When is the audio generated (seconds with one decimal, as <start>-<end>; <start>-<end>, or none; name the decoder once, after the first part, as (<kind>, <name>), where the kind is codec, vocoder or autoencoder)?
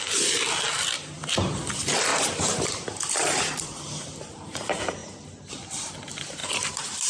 0.0-5.0 (vocoder, BigVGAN v2); 5.5-6.4